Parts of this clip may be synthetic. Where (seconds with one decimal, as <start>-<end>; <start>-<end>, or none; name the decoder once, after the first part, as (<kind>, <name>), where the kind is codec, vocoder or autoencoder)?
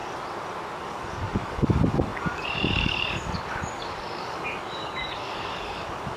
0.8-6.2 (codec, DAC)